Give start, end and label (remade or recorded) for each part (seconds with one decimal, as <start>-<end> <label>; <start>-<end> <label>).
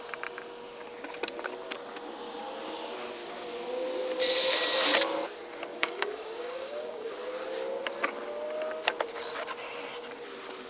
0.0-5.7 recorded; 5.7-7.1 remade; 7.1-10.7 recorded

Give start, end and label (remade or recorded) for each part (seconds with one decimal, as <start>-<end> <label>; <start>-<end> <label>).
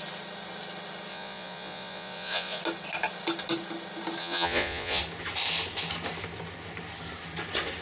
0.0-1.1 recorded; 1.1-2.6 remade; 2.6-4.2 recorded; 4.2-5.0 remade; 5.0-7.8 recorded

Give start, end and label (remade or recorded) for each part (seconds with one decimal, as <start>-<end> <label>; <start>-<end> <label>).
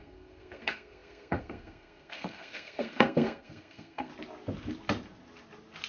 0.0-4.1 remade; 4.1-5.9 recorded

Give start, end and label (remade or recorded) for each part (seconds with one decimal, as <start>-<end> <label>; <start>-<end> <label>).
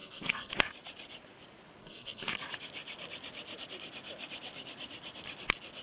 0.0-0.5 remade; 0.5-1.8 recorded; 1.8-2.3 remade; 2.3-5.8 recorded